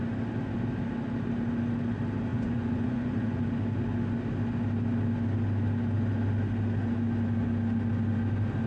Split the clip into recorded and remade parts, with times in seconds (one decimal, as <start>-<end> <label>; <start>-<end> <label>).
0.0-2.3 recorded; 2.3-3.4 remade; 3.4-8.7 recorded